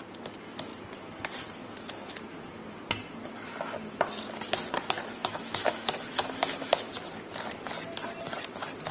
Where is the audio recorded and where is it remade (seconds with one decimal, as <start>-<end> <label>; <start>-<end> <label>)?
0.0-5.2 recorded; 5.2-6.9 remade; 6.9-8.9 recorded